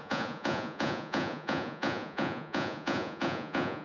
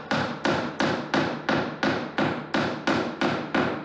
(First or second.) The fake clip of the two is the first